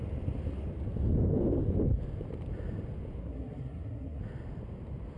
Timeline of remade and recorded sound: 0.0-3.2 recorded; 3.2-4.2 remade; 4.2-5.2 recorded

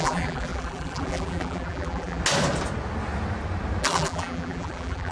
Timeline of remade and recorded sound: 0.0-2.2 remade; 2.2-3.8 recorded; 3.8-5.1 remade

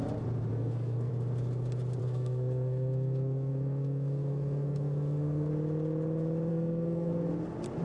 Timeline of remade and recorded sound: 0.0-0.5 recorded; 0.5-1.1 remade; 1.1-2.0 recorded; 2.0-5.5 remade; 5.5-6.5 recorded; 6.5-7.1 remade; 7.1-7.8 recorded

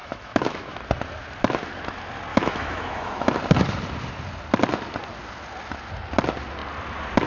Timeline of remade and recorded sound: 0.0-0.8 remade; 0.8-2.3 recorded; 2.3-3.3 remade; 3.3-7.3 recorded